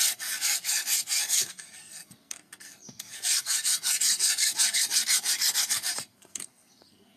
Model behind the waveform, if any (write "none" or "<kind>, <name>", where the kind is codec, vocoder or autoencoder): codec, SNAC